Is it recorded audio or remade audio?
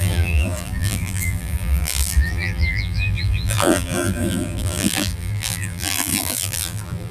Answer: remade